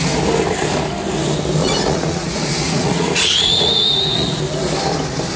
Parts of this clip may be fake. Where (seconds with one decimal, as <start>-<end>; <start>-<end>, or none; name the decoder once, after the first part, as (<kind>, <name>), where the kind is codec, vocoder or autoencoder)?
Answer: 1.6-4.4 (vocoder, Vocos)